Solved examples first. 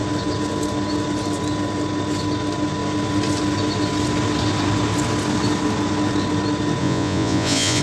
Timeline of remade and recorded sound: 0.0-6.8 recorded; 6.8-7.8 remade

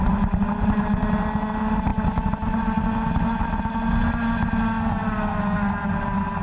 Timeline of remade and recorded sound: 0.0-6.4 recorded

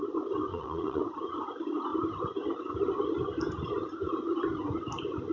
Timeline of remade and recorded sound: 0.0-0.5 recorded; 0.5-1.0 remade; 1.0-5.3 recorded

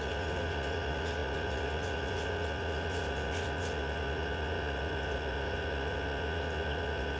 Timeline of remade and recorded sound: 0.0-7.2 remade

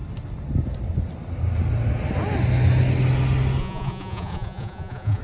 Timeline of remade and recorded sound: 0.0-3.6 recorded; 3.6-5.2 remade

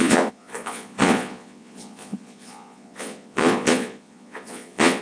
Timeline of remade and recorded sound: 0.0-5.0 remade